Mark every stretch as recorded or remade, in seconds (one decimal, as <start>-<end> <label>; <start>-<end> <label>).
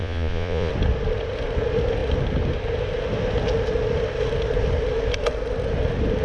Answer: 0.0-0.7 remade; 0.7-6.2 recorded